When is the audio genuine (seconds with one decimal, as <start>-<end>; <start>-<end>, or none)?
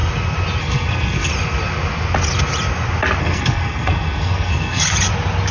0.0-0.6; 1.3-3.2; 4.8-5.5